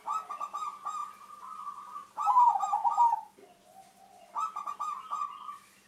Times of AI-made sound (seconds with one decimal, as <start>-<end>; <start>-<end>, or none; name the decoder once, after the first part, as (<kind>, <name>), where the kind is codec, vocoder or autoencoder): none